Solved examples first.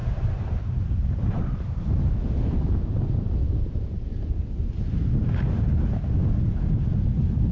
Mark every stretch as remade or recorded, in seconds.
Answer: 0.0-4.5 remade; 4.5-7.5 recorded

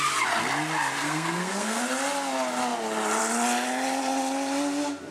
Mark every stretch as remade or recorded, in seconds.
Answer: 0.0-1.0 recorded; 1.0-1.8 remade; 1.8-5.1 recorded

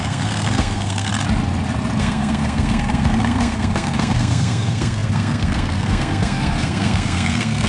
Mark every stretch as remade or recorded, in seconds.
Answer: 0.0-1.1 remade; 1.1-2.0 recorded; 2.0-7.7 remade

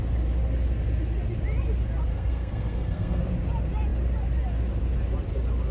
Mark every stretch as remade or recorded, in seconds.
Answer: 0.0-2.1 recorded; 2.1-3.2 remade; 3.2-5.7 recorded